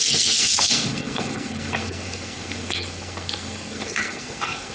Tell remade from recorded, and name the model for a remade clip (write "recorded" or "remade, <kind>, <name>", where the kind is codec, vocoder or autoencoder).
remade, codec, SNAC